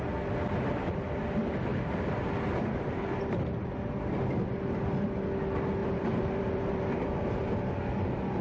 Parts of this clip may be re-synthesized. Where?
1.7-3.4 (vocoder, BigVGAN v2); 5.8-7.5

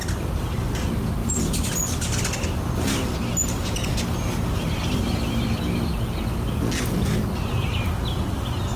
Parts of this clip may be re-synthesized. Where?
1.2-1.8 (vocoder, BigVGAN v2); 3.4-3.9

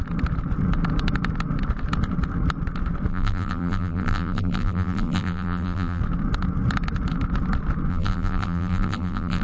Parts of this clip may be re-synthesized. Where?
3.1-6.0 (vocoder, BigVGAN v2); 7.9-9.4

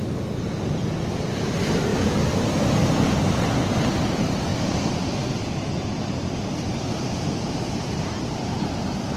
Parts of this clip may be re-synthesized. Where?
4.5-8.7 (vocoder, BigVGAN v2)